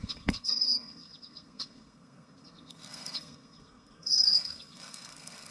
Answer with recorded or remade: remade